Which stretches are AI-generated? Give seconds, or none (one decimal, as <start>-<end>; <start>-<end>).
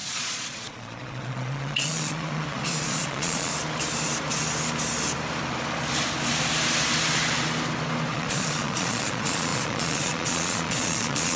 0.0-3.5; 8.1-11.4